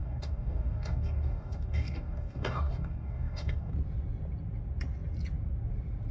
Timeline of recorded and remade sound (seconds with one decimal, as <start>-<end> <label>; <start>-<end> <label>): 0.0-3.7 remade; 3.7-6.1 recorded